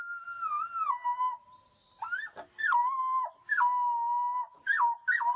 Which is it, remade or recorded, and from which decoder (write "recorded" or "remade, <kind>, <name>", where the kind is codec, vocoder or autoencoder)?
recorded